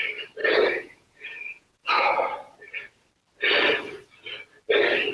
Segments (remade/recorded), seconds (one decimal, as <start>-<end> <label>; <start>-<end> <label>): 0.0-0.4 recorded; 0.4-2.1 remade; 2.1-5.1 recorded

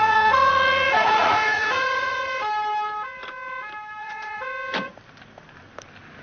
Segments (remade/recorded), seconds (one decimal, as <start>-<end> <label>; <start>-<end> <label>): 0.0-2.2 remade; 2.2-4.0 recorded; 4.0-4.5 remade; 4.5-6.2 recorded

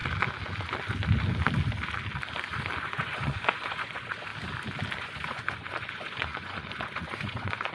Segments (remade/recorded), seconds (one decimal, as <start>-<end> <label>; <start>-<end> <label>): 0.0-2.8 recorded; 2.8-4.3 remade; 4.3-5.0 recorded; 5.0-7.7 remade

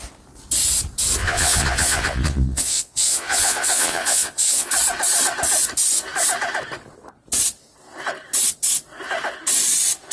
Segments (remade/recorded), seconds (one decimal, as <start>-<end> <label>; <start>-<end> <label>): 0.0-1.2 recorded; 1.2-4.7 remade; 4.7-10.1 recorded

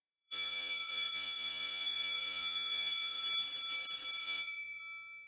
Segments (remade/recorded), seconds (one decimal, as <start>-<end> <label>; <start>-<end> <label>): 0.0-3.2 remade; 3.2-4.2 recorded; 4.2-4.8 remade; 4.8-5.3 recorded

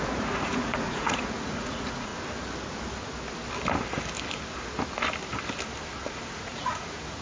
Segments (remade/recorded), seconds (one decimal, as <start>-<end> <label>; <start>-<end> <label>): 0.0-2.1 remade; 2.1-6.1 recorded; 6.1-7.2 remade

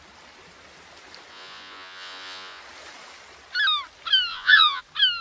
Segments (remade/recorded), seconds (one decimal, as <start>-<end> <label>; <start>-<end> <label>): 0.0-1.3 recorded; 1.3-2.6 remade; 2.6-4.3 recorded; 4.3-4.8 remade; 4.8-5.2 recorded